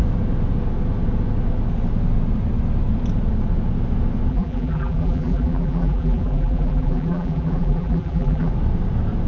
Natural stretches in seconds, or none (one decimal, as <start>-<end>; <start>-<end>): 0.0-4.3; 8.5-9.3